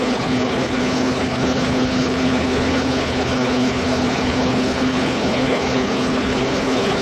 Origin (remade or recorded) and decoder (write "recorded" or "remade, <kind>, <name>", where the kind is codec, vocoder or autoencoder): remade, codec, HILCodec